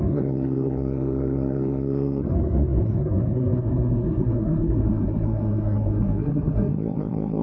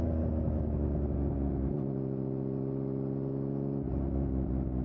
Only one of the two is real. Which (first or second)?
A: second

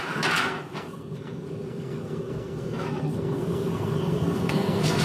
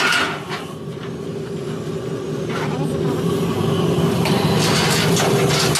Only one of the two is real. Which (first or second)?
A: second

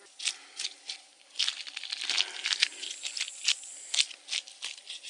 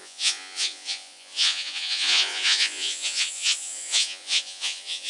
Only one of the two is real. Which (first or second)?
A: first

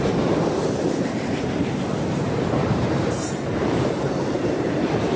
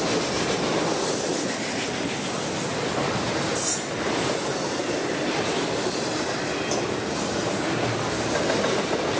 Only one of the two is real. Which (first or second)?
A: second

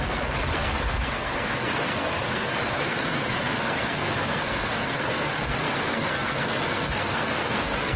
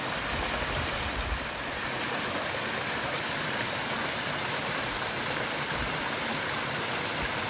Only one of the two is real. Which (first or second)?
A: second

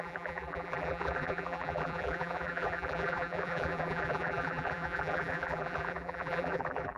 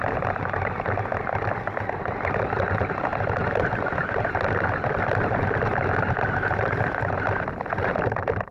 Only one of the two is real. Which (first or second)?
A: second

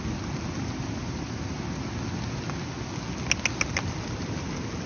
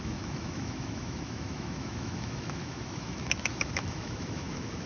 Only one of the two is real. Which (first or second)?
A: first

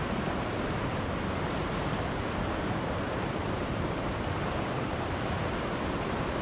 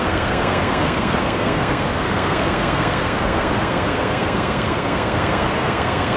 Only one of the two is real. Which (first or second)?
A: first